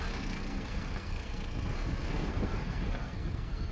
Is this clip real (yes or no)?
no